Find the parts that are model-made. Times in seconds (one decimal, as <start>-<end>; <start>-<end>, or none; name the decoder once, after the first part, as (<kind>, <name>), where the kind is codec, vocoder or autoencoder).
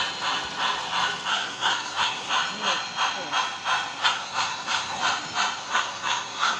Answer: 1.3-2.3 (codec, SNAC); 4.0-5.0; 5.6-6.6